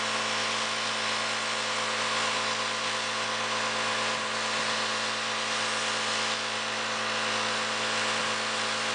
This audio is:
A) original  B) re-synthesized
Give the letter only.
A